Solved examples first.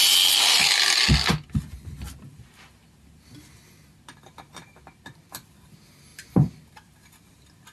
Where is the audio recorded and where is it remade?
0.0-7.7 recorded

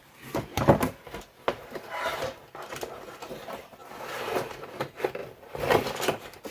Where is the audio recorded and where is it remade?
0.0-6.5 recorded